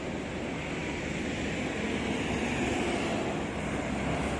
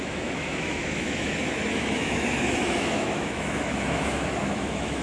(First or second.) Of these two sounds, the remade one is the second